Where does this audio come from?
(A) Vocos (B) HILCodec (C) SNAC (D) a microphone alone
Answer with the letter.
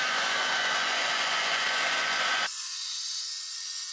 A